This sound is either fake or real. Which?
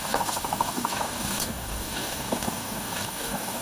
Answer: fake